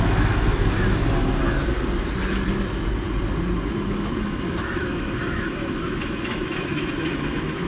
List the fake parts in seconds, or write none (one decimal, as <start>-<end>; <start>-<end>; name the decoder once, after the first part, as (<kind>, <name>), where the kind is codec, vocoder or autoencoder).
0.0-0.6 (autoencoder, DAC-VAE); 3.7-7.7